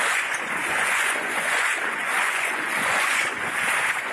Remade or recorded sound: remade